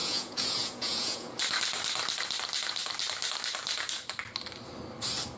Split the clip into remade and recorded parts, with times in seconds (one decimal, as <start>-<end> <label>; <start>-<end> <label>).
0.0-1.4 remade; 1.4-5.4 recorded